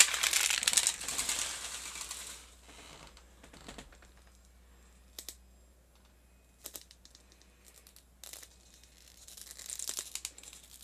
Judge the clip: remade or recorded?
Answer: recorded